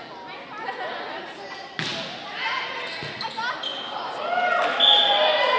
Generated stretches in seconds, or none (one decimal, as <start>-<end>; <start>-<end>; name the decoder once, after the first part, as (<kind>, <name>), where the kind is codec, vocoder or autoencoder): none